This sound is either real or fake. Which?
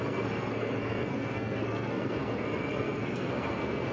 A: fake